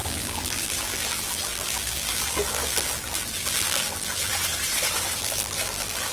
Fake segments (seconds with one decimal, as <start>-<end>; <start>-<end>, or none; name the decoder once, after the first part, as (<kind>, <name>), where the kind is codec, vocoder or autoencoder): 0.0-4.3 (vocoder, BigVGAN v2); 5.2-6.1